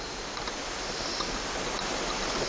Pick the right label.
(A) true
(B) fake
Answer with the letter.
A